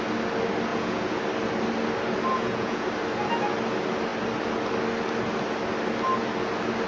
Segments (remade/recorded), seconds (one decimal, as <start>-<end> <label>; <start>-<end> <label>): 0.0-0.7 recorded; 0.7-1.2 remade; 1.2-2.3 recorded; 2.3-2.9 remade; 2.9-6.9 recorded